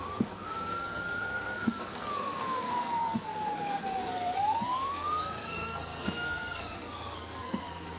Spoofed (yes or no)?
yes